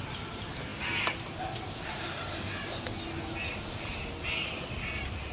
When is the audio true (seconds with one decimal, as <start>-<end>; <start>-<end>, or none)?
0.0-5.3